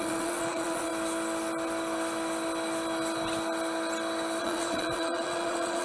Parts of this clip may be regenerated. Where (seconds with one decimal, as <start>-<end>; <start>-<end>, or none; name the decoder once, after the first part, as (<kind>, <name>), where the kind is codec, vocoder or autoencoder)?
0.0-0.9 (vocoder, Vocos); 4.4-5.8